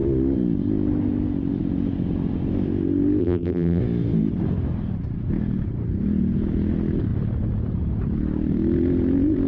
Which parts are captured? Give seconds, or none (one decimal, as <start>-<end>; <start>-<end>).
0.0-3.2; 3.8-9.5